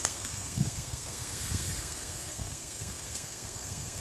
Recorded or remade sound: remade